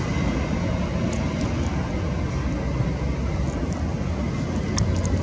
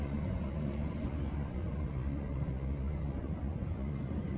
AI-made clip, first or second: second